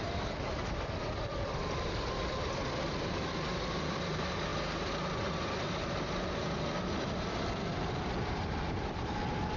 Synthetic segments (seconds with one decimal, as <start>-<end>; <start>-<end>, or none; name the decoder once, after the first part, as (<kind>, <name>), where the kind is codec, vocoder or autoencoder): none